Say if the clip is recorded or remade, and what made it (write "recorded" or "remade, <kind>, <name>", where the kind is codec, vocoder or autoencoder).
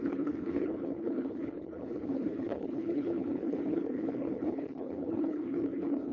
remade, codec, HILCodec